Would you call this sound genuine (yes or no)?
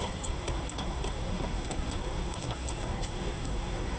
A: no